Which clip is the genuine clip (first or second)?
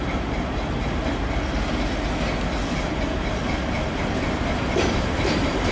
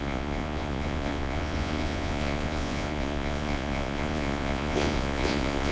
first